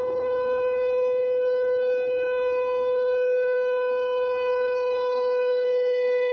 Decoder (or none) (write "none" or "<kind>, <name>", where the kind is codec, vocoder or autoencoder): codec, HILCodec